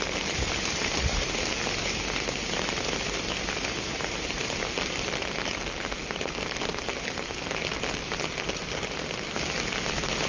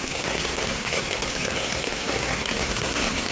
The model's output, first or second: second